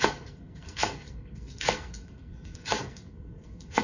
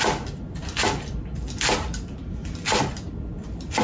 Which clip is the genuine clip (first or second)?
second